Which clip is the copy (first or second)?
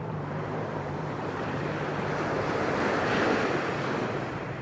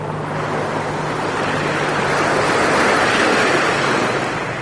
first